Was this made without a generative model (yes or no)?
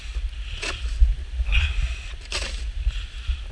yes